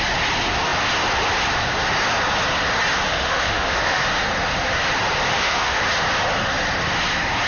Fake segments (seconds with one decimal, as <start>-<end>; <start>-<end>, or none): 3.1-4.0; 5.3-5.8